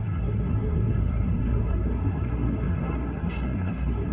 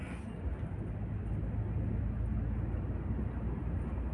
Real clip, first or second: second